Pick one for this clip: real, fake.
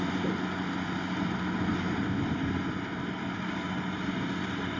real